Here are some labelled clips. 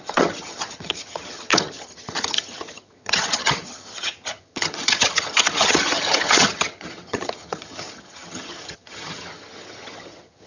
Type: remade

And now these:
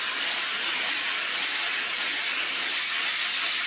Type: recorded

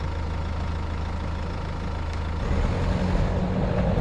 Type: recorded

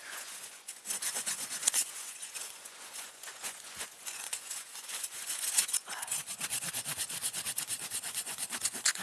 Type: remade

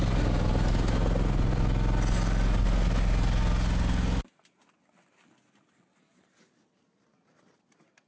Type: recorded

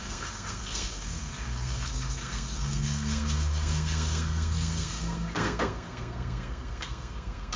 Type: remade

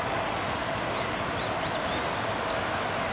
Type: recorded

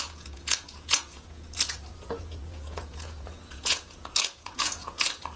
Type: remade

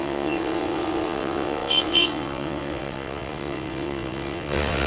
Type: remade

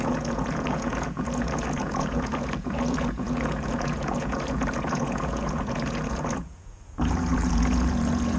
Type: remade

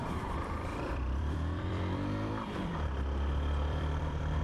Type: remade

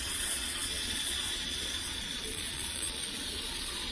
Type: remade